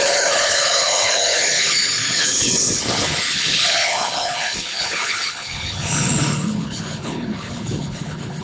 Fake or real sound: fake